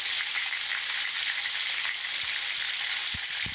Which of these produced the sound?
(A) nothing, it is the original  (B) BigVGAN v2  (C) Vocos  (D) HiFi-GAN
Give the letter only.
A